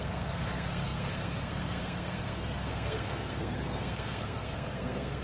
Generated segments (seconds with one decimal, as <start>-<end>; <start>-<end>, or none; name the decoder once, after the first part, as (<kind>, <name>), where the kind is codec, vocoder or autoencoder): 0.0-5.2 (codec, SNAC)